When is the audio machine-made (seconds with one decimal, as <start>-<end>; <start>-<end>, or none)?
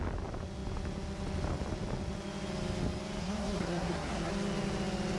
3.2-4.3